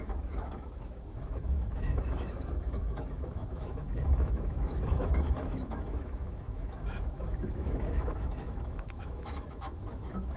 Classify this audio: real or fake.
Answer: fake